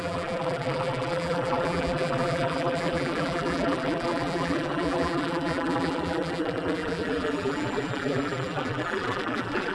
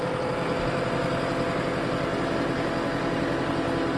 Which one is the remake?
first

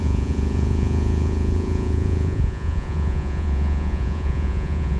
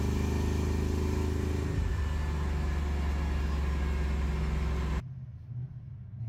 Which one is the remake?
first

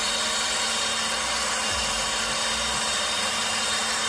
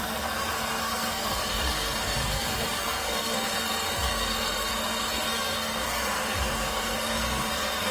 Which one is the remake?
second